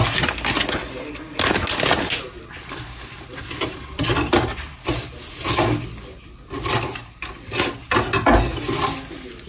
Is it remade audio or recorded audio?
recorded